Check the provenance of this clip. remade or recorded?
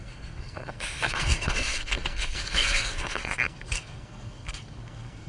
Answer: remade